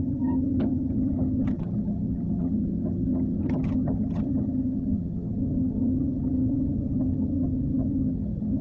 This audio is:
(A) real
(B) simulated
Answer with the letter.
B